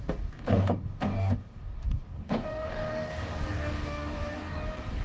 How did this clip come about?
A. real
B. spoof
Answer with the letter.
B